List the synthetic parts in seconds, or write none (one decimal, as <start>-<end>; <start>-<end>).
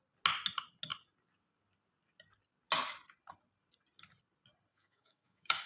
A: 4.7-5.7